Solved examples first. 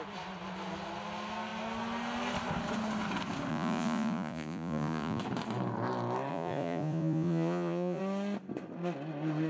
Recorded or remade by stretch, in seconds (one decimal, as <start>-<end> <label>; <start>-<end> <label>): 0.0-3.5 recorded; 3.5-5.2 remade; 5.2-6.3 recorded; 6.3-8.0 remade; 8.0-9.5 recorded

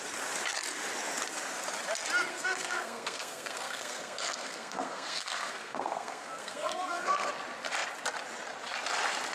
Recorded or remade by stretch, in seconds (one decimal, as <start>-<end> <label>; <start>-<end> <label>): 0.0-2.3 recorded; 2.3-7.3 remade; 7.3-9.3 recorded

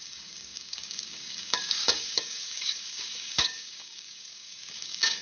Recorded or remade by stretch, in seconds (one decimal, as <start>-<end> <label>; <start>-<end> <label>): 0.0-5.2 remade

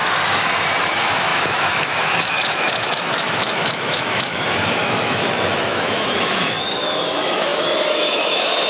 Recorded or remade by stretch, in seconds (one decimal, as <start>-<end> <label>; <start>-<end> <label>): 0.0-0.8 recorded; 0.8-8.7 remade

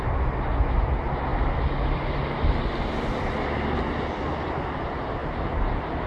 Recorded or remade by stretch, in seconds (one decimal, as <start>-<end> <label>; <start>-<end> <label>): 0.0-6.1 recorded